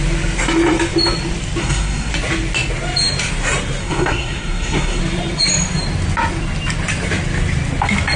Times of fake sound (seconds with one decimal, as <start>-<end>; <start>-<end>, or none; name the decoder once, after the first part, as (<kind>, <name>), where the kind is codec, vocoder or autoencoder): 1.6-2.1 (codec, SNAC); 3.8-5.0